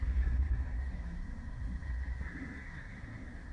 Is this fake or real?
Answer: fake